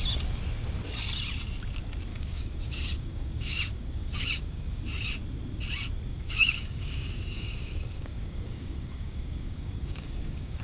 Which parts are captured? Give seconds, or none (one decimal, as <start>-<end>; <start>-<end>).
0.0-2.1; 4.8-6.1